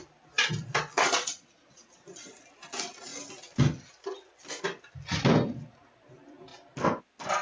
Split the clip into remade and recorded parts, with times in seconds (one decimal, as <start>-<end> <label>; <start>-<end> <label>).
0.0-1.0 recorded; 1.0-2.4 remade; 2.4-7.4 recorded